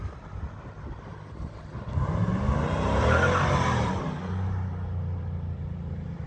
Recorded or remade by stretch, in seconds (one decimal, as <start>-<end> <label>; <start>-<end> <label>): 0.0-6.3 recorded